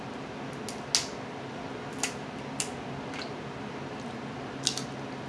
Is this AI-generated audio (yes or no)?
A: no